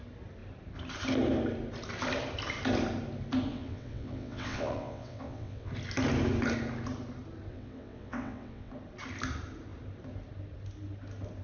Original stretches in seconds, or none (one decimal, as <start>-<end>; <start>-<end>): 0.0-3.5; 5.7-7.5; 8.7-11.4